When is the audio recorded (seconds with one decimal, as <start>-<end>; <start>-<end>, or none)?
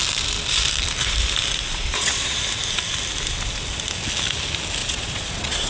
0.0-1.7; 2.4-4.8